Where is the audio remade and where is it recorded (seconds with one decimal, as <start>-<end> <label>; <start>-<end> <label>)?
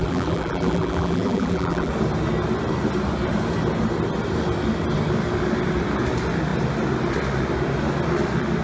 0.0-1.9 remade; 1.9-8.6 recorded